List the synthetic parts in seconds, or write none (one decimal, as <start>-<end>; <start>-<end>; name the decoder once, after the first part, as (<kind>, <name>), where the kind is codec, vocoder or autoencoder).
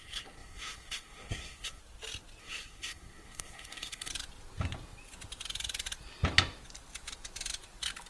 0.0-1.8 (codec, SNAC); 2.4-4.1